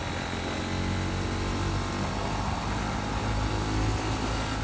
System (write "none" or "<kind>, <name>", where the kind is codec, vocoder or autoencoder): none